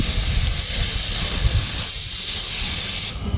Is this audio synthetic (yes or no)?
no